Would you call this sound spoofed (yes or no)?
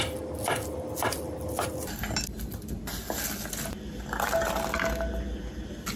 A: no